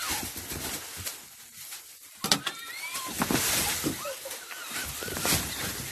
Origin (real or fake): real